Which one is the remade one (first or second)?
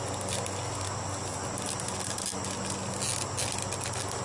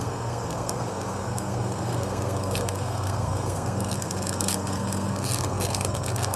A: second